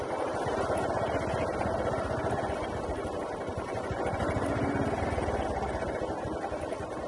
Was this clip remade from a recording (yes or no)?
no